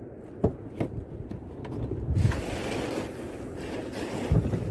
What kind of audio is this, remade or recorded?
recorded